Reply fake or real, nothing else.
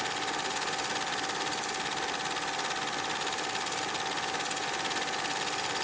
real